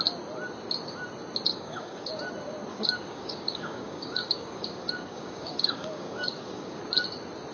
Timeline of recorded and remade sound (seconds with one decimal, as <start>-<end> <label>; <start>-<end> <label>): 0.0-1.5 recorded; 1.5-2.1 remade; 2.1-2.7 recorded; 2.7-6.8 remade; 6.8-7.5 recorded